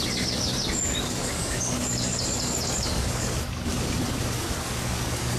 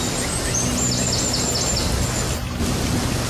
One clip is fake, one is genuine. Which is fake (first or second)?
first